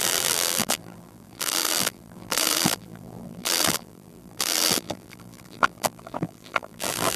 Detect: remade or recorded remade